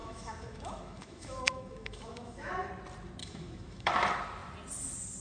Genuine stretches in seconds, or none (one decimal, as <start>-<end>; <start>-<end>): 2.7-3.2; 3.9-5.2